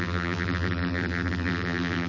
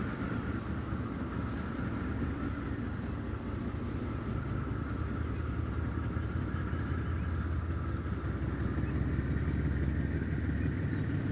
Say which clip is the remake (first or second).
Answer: first